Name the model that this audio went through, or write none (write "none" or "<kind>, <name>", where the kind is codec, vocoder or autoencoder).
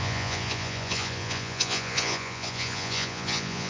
vocoder, Vocos